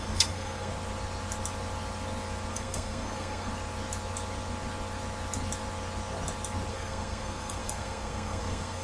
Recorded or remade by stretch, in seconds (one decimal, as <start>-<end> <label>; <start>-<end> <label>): 0.0-0.7 remade; 0.7-2.5 recorded; 2.5-3.5 remade; 3.5-6.7 recorded; 6.7-8.8 remade